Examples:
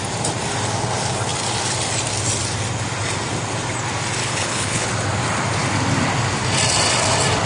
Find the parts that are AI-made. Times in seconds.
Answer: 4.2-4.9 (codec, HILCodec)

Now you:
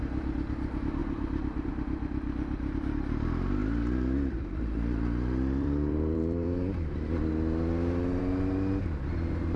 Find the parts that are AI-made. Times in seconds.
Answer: 1.0-1.7 (vocoder, BigVGAN v2); 3.6-7.3